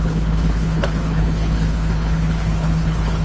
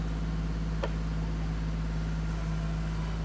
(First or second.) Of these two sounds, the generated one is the first